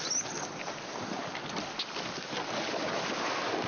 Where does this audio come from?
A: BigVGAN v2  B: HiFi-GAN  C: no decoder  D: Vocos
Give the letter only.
C